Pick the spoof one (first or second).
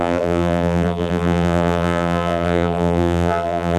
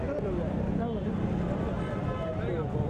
first